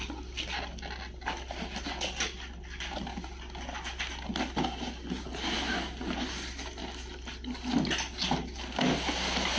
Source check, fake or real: real